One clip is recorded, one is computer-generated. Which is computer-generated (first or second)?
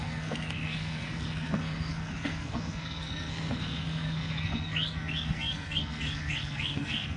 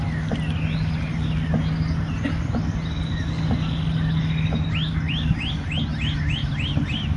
first